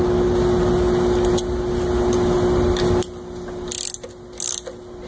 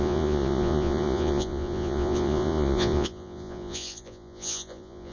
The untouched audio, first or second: first